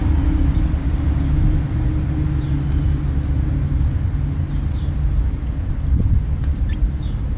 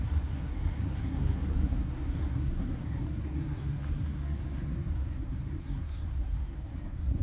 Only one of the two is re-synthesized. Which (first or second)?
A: second